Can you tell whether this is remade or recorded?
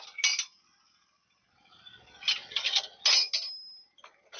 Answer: recorded